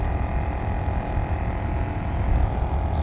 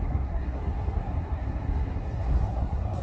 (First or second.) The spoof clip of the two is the second